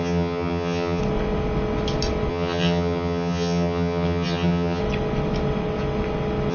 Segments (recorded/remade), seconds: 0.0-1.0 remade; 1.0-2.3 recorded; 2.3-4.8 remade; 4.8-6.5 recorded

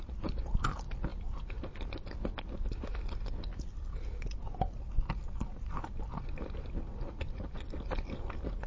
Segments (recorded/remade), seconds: 0.0-8.7 recorded

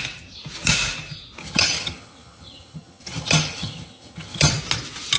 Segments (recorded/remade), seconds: 0.0-1.4 recorded; 1.4-4.5 remade; 4.5-5.2 recorded

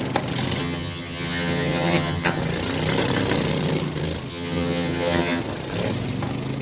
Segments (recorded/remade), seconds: 0.0-0.6 recorded; 0.6-2.4 remade; 2.4-4.3 recorded; 4.3-5.4 remade; 5.4-6.6 recorded

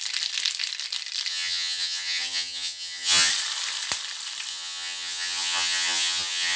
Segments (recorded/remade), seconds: 0.0-1.3 recorded; 1.3-3.3 remade; 3.3-4.5 recorded; 4.5-6.6 remade

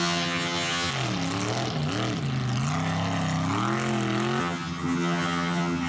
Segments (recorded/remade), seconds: 0.0-0.9 remade; 0.9-4.4 recorded; 4.4-5.9 remade